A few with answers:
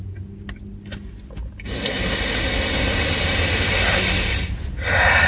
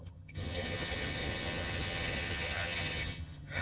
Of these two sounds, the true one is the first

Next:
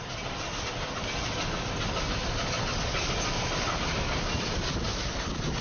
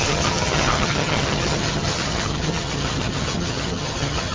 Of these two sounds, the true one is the first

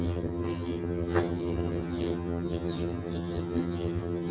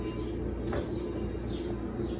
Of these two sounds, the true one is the second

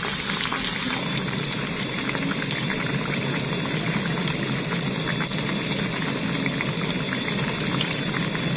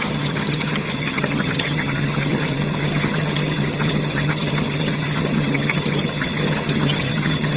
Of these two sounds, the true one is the first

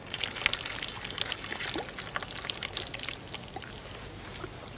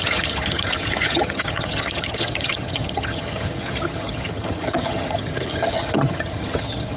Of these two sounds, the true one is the first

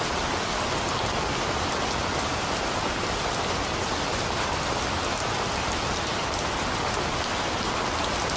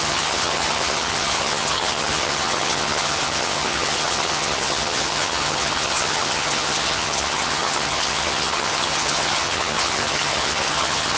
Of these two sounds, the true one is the first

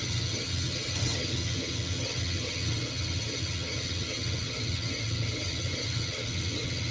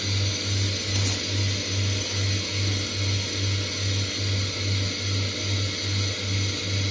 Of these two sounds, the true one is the second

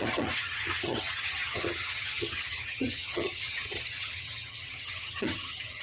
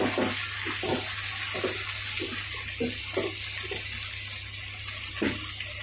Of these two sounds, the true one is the second